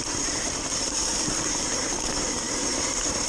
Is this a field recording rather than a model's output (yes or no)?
yes